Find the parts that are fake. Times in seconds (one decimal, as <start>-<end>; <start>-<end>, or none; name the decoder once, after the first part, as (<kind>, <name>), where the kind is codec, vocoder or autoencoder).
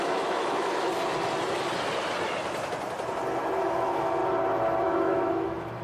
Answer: 0.0-0.9 (autoencoder, DAC-VAE); 3.6-4.2; 4.8-5.8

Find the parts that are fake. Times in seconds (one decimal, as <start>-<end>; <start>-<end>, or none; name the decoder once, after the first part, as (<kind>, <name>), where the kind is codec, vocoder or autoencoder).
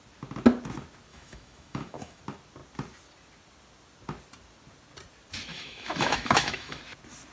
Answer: 1.1-2.2 (autoencoder, DAC-VAE); 5.5-6.8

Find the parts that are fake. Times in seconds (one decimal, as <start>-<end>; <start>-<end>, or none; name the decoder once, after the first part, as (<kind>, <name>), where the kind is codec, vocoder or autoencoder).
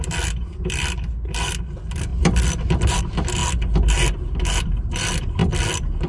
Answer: 0.0-5.4 (vocoder, BigVGAN v2)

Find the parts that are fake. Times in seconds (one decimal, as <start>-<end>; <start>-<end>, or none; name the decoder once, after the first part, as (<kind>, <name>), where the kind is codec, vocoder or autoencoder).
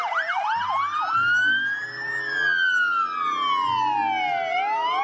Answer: none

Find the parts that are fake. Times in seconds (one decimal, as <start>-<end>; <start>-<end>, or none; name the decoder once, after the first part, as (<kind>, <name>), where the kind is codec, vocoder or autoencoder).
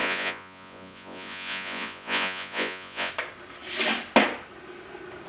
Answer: 0.0-3.1 (vocoder, Vocos)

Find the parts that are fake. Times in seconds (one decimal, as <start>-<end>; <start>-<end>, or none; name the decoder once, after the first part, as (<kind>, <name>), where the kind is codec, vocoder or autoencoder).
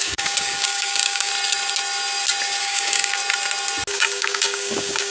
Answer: 0.0-1.3 (codec, DAC); 2.6-3.2; 3.9-5.1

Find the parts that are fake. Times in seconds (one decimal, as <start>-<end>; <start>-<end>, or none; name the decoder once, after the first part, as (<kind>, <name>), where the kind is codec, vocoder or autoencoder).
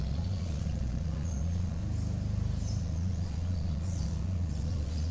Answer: 0.0-1.8 (vocoder, Vocos); 2.8-5.1